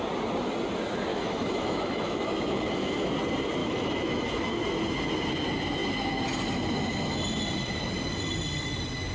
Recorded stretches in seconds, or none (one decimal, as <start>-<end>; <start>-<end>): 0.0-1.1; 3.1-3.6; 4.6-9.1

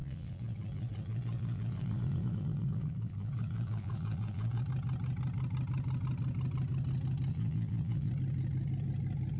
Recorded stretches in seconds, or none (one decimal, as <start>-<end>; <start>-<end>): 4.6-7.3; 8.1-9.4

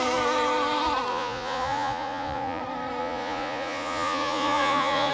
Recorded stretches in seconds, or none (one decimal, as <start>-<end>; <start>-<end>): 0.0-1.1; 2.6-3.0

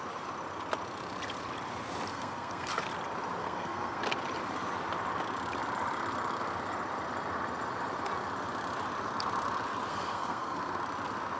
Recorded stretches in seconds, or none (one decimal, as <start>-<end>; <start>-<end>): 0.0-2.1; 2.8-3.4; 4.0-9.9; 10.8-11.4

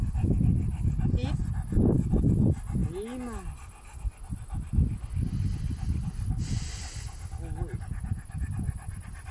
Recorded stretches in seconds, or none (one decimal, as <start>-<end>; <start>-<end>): 0.0-1.4; 2.4-9.3

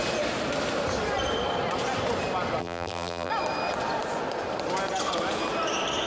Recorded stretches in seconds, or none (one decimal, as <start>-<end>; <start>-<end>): 0.0-2.6; 3.3-6.1